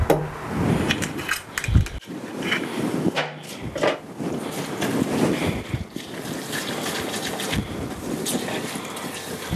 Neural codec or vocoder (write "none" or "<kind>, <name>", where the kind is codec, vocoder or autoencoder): none